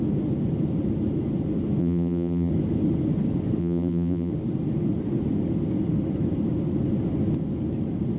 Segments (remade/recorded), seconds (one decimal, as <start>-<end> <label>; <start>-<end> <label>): 0.0-1.8 recorded; 1.8-2.5 remade; 2.5-3.6 recorded; 3.6-4.3 remade; 4.3-8.2 recorded